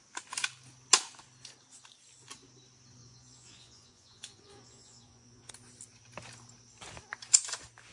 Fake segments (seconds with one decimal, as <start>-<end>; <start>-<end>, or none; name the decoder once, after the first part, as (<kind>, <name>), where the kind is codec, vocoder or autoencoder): 3.0-5.5 (vocoder, Vocos)